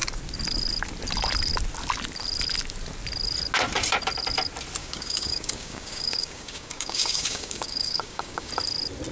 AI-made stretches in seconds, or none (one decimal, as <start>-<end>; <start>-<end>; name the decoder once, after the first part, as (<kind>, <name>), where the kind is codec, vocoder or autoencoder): 4.8-8.5 (codec, DAC)